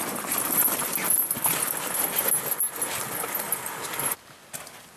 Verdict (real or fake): real